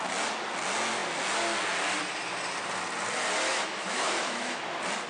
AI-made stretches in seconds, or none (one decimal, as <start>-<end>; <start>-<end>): 3.5-4.6